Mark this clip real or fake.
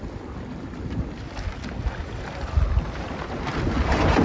real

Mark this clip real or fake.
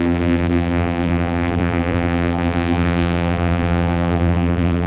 fake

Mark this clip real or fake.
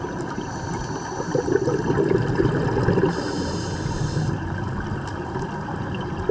real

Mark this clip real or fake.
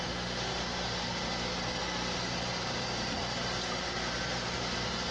real